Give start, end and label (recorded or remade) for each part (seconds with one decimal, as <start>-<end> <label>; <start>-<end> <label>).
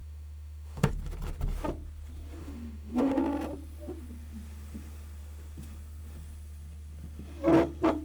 0.0-0.9 remade; 0.9-2.4 recorded; 2.4-3.2 remade; 3.2-8.0 recorded